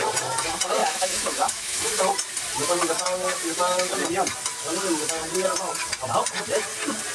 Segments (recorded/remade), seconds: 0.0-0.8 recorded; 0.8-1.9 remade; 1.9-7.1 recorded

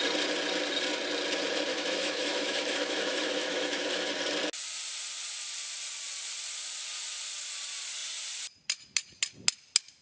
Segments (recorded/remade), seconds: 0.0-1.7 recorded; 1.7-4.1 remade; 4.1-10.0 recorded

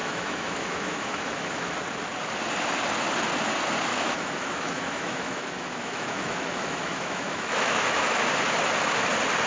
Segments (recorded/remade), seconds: 0.0-1.7 remade; 1.7-3.9 recorded; 3.9-8.2 remade; 8.2-9.5 recorded

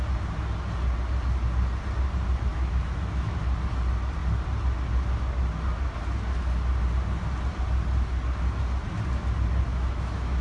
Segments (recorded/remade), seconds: 0.0-2.5 recorded; 2.5-3.4 remade; 3.4-9.7 recorded; 9.7-10.4 remade